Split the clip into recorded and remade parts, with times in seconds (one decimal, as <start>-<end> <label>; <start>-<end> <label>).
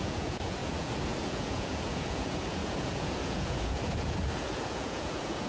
0.0-5.5 remade